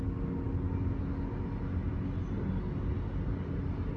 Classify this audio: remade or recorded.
recorded